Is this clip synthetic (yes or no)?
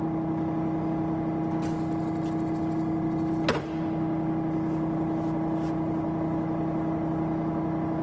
no